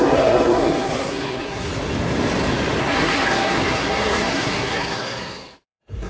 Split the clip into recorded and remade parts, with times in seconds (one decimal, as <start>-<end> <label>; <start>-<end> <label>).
0.0-1.7 remade; 1.7-2.8 recorded; 2.8-6.1 remade